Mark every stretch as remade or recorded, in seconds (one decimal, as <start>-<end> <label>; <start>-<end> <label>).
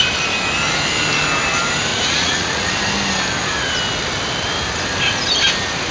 0.0-1.9 recorded; 1.9-2.8 remade; 2.8-5.9 recorded